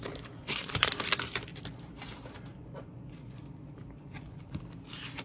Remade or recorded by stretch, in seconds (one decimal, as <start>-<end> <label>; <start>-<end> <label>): 0.0-0.4 recorded; 0.4-0.9 remade; 0.9-2.5 recorded; 2.5-3.4 remade; 3.4-4.0 recorded; 4.0-4.6 remade; 4.6-5.2 recorded